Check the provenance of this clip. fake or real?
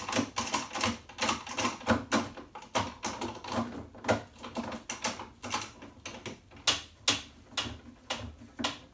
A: real